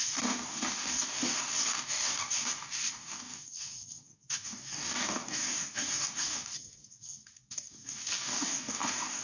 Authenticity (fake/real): fake